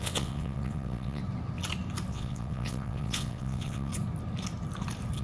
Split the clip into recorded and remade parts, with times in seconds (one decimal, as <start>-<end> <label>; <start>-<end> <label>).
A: 0.0-1.2 remade; 1.2-2.1 recorded; 2.1-3.9 remade; 3.9-5.2 recorded